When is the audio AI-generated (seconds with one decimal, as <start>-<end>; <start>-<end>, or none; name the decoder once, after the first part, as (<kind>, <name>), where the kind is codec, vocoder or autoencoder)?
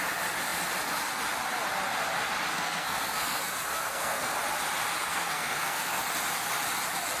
2.5-4.4 (codec, SNAC); 5.1-6.0